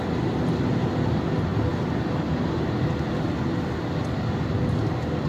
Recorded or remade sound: recorded